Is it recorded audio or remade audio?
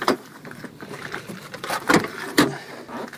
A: remade